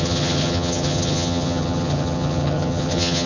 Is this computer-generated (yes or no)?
yes